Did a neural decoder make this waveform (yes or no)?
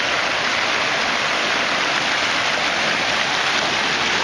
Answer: no